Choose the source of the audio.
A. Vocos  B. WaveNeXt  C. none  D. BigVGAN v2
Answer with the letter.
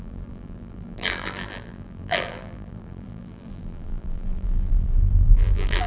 D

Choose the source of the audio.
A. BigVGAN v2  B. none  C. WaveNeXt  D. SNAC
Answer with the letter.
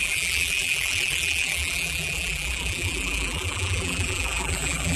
A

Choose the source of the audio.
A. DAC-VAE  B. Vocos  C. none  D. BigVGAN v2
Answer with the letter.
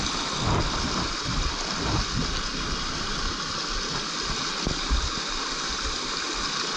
C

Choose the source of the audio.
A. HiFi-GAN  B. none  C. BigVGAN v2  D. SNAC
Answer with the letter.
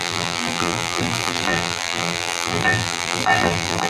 C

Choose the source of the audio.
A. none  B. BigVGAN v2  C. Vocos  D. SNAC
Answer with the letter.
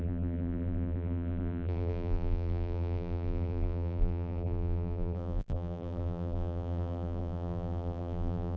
B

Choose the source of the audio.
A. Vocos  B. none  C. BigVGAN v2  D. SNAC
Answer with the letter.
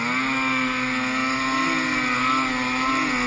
B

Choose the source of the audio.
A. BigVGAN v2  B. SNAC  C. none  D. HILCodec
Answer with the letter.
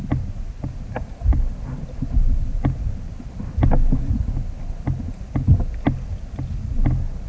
C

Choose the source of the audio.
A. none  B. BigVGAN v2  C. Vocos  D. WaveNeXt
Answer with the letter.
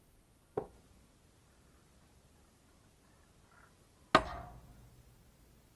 A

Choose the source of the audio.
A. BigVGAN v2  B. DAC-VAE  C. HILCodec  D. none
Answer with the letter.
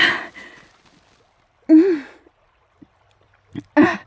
D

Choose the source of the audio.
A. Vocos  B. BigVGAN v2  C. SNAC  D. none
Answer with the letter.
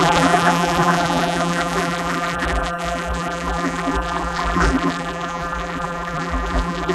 B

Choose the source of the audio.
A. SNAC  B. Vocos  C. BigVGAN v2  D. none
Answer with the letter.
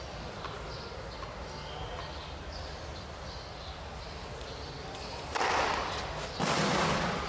D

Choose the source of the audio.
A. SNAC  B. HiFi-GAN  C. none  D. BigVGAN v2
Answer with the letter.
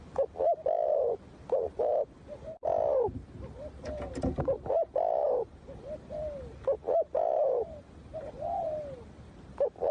D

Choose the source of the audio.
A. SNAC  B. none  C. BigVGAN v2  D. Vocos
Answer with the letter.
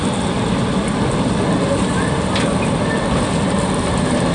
B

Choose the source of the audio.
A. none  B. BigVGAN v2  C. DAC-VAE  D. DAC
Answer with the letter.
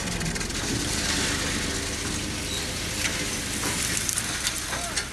A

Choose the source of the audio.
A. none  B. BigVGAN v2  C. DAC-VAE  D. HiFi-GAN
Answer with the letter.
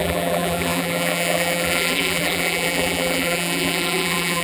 B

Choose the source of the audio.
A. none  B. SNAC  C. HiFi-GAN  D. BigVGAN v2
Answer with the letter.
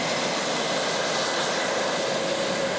A